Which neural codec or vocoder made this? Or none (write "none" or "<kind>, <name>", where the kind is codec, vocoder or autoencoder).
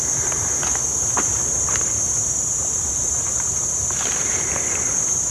vocoder, BigVGAN v2